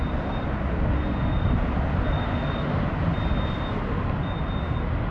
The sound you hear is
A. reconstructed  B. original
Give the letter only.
B